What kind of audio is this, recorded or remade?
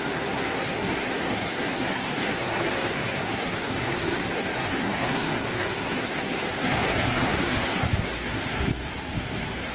remade